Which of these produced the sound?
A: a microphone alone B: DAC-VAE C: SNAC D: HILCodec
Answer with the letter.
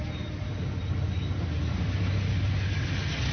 A